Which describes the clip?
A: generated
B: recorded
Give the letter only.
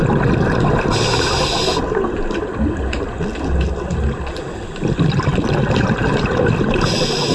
B